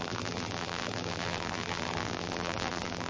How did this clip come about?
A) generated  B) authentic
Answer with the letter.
A